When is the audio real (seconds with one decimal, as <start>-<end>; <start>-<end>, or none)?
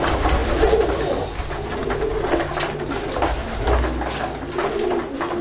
0.0-5.4